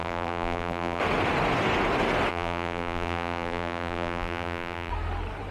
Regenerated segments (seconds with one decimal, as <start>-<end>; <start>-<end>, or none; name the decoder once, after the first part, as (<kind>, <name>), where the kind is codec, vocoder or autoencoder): 0.0-1.0 (vocoder, BigVGAN v2); 2.3-4.9